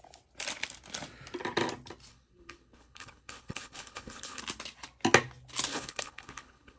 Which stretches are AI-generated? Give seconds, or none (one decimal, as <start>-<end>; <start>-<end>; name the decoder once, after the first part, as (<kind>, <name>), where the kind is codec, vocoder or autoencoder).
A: 2.1-4.4 (codec, HILCodec); 5.7-6.8